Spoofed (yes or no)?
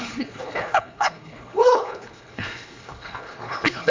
yes